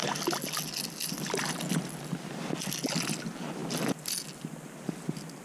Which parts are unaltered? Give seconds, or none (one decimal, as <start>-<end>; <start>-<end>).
0.0-5.4